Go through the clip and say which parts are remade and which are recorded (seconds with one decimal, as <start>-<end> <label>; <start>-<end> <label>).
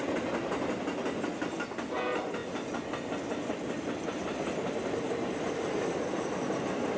0.0-7.0 recorded